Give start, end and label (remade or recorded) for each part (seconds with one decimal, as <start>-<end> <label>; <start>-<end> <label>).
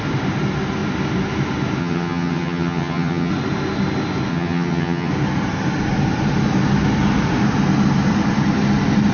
0.0-1.8 recorded; 1.8-3.3 remade; 3.3-4.3 recorded; 4.3-5.1 remade; 5.1-9.1 recorded